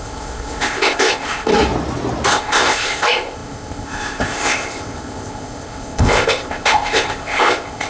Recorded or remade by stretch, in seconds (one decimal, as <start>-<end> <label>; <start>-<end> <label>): 0.0-1.5 remade; 1.5-2.3 recorded; 2.3-7.9 remade